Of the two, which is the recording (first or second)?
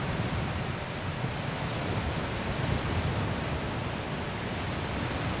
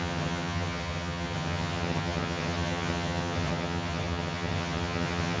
first